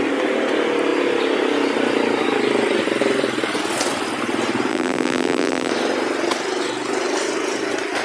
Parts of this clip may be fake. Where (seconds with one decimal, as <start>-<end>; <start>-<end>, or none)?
4.7-5.7